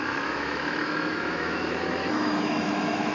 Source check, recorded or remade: remade